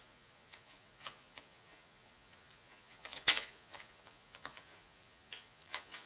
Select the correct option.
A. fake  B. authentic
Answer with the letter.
A